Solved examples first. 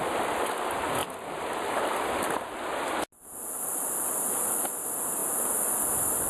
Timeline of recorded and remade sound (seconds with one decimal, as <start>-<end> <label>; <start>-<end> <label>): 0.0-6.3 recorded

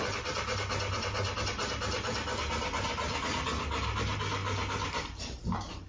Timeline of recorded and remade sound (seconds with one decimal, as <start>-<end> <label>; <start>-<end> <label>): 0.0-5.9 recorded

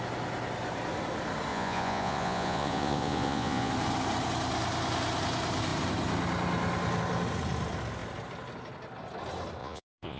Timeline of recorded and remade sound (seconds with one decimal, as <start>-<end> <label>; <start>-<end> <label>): 0.0-1.5 recorded; 1.5-3.7 remade; 3.7-9.6 recorded; 9.6-10.2 remade

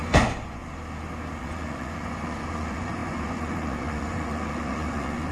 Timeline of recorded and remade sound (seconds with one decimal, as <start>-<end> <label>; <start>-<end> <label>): 0.0-0.6 remade; 0.6-1.4 recorded; 1.4-5.3 remade